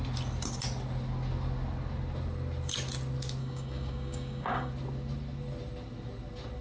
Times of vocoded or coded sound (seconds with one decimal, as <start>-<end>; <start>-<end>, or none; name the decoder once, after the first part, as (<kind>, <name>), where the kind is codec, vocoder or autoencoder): 3.4-4.7 (codec, DAC)

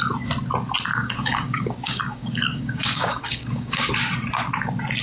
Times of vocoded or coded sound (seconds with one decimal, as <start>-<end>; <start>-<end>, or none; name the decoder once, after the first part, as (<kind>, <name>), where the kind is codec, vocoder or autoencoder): 0.9-3.9 (codec, DAC)